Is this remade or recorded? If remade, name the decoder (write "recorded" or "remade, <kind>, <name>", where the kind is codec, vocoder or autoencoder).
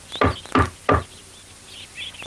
recorded